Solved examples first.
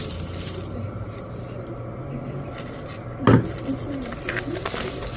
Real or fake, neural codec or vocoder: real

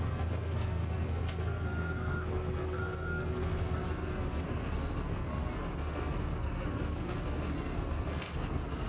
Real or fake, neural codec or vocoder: fake, codec, SNAC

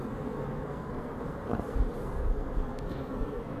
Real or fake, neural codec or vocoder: fake, codec, SNAC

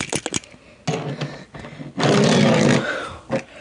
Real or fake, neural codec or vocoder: real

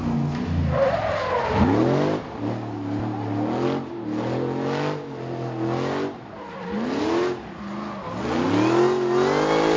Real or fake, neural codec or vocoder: real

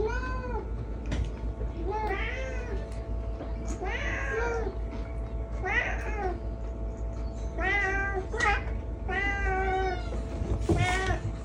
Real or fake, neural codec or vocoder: real